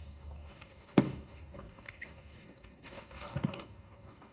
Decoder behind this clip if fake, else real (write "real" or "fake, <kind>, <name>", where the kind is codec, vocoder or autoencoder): fake, codec, DAC